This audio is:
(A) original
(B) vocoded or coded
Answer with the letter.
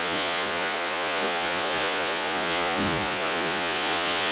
B